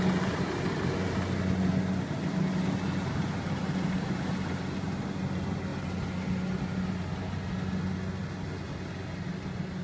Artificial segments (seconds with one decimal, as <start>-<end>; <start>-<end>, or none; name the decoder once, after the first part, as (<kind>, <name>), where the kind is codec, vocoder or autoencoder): none